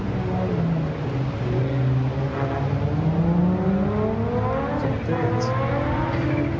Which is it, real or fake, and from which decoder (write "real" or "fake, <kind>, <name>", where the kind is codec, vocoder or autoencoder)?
real